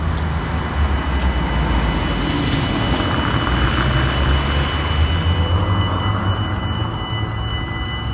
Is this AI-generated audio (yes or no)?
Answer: no